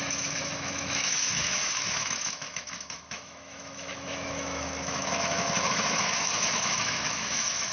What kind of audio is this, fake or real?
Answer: fake